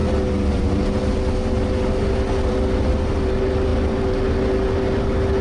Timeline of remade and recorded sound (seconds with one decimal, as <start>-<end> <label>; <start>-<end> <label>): 0.0-5.4 recorded